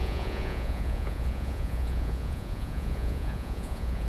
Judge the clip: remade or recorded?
remade